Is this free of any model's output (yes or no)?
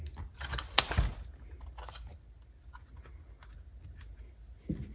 yes